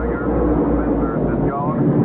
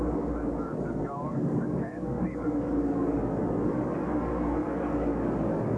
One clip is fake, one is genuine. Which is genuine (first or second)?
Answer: first